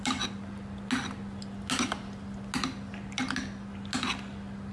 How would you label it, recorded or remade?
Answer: recorded